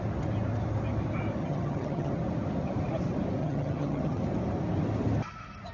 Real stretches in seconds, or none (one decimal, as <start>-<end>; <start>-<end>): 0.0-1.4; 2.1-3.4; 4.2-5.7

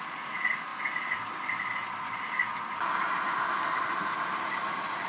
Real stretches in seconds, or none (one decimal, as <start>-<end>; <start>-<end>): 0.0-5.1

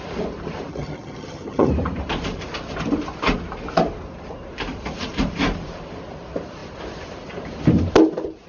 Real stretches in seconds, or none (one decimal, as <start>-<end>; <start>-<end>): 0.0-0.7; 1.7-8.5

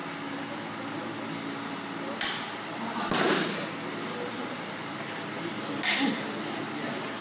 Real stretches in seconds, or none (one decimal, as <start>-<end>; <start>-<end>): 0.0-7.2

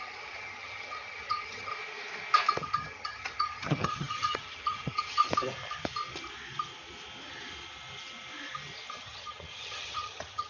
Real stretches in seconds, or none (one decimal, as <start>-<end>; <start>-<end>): 1.7-2.6; 5.2-9.0